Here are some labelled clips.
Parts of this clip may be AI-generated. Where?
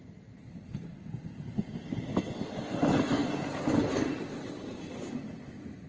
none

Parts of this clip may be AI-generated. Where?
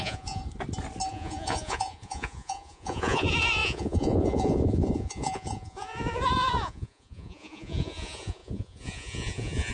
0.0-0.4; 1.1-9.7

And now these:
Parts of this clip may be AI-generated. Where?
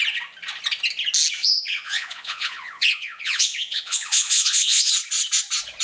1.4-4.9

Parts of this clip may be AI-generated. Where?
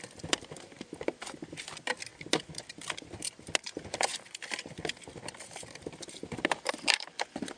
none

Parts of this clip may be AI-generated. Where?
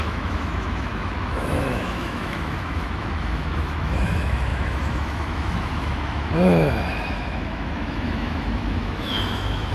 0.0-9.7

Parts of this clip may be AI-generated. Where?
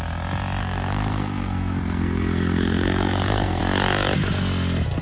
0.6-3.6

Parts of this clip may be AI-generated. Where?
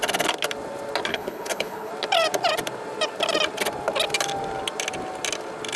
1.1-1.9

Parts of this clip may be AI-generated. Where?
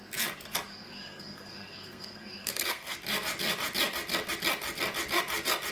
0.7-3.0